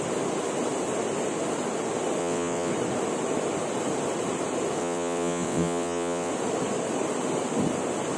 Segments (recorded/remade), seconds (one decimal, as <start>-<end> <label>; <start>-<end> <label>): 0.0-2.2 recorded; 2.2-2.7 remade; 2.7-4.8 recorded; 4.8-6.3 remade; 6.3-8.2 recorded